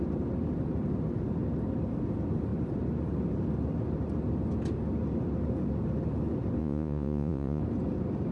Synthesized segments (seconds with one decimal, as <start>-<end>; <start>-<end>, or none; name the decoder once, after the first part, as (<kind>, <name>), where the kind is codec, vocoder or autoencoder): 6.6-7.6 (vocoder, Vocos)